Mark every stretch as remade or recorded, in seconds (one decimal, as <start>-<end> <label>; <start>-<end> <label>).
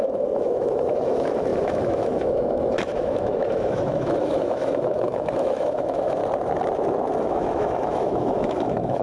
0.0-6.2 remade; 6.2-7.1 recorded; 7.1-9.0 remade